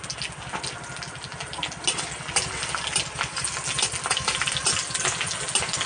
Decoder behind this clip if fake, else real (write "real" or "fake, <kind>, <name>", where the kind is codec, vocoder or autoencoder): real